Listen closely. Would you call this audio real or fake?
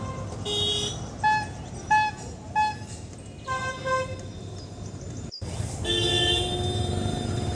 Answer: real